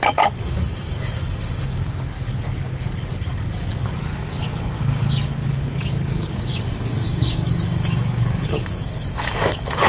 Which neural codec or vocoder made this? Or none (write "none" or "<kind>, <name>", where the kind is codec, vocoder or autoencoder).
codec, DAC